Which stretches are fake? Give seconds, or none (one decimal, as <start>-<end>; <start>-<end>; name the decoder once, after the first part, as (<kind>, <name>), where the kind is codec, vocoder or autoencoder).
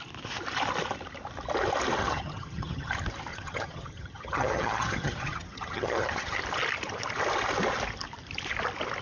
2.0-2.9 (vocoder, HiFi-GAN); 3.3-6.4